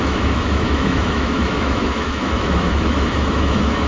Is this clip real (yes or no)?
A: no